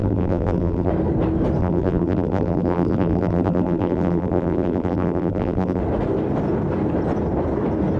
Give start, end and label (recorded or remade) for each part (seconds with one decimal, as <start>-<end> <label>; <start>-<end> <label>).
0.0-0.9 remade; 0.9-1.6 recorded; 1.6-5.8 remade; 5.8-8.0 recorded